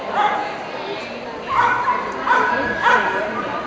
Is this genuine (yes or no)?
yes